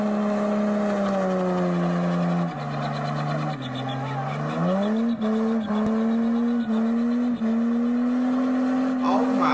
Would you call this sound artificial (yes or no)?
no